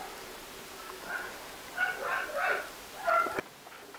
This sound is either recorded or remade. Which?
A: recorded